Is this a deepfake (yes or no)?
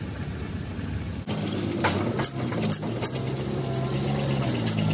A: no